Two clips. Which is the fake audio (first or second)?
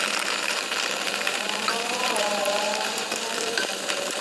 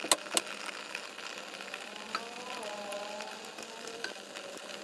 first